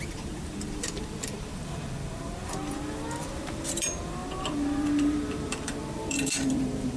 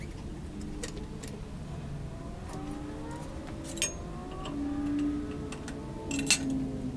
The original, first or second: second